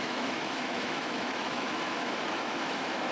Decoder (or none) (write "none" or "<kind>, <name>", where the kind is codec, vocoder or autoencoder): autoencoder, DAC-VAE